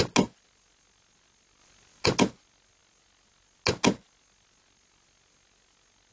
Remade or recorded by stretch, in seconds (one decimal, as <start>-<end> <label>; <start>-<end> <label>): 0.0-6.1 recorded